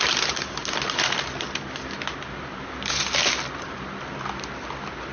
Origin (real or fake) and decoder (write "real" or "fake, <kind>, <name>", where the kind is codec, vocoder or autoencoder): real